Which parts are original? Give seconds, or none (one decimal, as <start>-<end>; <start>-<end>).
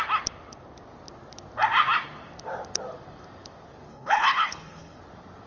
0.0-3.9; 5.0-5.5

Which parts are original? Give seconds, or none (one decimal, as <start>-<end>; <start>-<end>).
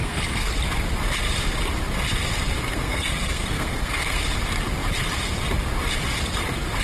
0.5-2.7; 4.2-6.8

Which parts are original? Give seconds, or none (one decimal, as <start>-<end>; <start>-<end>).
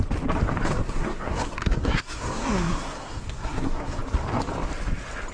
0.0-0.8; 4.0-5.3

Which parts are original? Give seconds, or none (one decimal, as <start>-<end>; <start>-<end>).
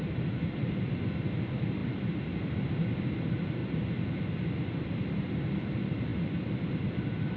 1.8-2.9; 3.6-5.4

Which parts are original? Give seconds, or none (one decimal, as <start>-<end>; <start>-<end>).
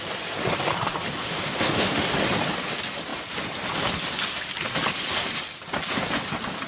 0.0-1.2; 2.0-6.7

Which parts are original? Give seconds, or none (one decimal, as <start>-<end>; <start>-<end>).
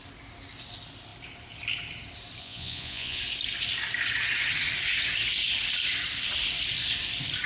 0.0-2.4; 3.2-7.5